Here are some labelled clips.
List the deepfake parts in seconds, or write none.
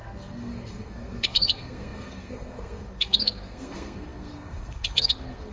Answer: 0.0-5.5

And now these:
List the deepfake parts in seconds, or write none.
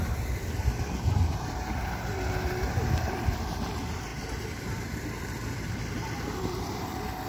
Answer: 0.0-7.3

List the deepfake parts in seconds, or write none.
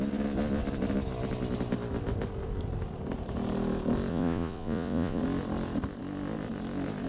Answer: 4.1-5.2